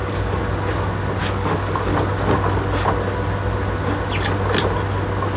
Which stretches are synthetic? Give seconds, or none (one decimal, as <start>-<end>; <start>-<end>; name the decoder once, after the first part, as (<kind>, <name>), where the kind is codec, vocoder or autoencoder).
0.0-0.4 (codec, DAC); 1.2-1.9